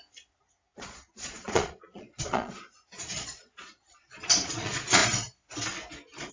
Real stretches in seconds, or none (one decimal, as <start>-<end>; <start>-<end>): 5.0-6.3